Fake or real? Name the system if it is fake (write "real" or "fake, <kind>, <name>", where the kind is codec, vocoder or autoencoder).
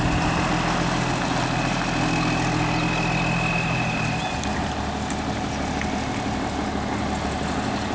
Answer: real